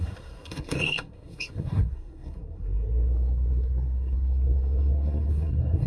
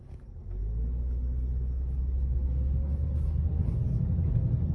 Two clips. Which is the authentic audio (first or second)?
second